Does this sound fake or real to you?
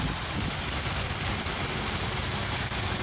real